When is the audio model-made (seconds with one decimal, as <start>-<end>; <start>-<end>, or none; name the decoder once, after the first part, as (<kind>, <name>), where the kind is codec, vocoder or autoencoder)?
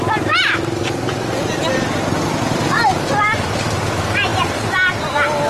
none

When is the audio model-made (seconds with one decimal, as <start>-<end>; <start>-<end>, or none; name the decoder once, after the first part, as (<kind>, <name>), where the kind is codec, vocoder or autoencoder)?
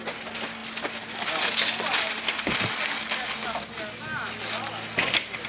none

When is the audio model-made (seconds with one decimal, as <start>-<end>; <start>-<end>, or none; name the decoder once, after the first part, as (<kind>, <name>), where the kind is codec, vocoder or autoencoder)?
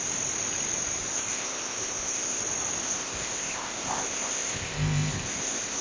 1.1-2.4 (codec, ZipCodec); 2.8-5.8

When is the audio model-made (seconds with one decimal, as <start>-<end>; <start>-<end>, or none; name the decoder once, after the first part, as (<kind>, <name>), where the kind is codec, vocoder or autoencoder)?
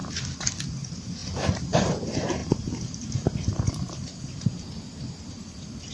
0.7-5.9 (vocoder, BigVGAN v2)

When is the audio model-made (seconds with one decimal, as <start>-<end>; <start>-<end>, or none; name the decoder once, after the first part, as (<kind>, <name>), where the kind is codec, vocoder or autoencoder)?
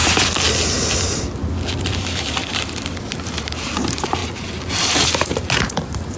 1.8-2.4 (vocoder, BigVGAN v2); 3.0-4.2; 4.7-6.2